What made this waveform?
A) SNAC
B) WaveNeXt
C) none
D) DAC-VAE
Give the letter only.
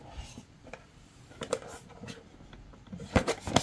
C